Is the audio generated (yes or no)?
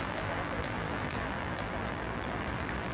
yes